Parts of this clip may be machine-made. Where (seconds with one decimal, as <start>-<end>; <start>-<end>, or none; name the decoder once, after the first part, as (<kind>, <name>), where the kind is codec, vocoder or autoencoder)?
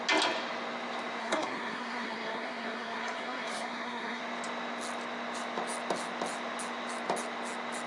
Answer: 1.2-4.2 (codec, SNAC)